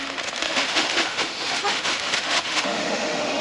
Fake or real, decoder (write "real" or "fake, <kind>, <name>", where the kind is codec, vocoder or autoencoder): fake, autoencoder, DAC-VAE